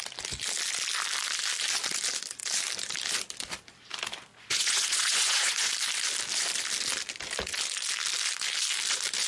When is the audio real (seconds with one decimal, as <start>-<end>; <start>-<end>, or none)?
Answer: 0.0-4.3; 5.7-9.3